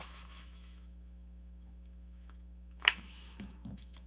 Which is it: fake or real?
fake